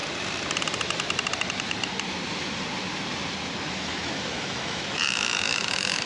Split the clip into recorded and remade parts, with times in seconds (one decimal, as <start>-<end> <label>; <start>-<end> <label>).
0.0-3.7 recorded; 3.7-6.1 remade